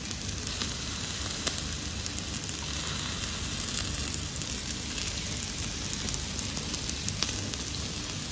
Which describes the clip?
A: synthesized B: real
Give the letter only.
B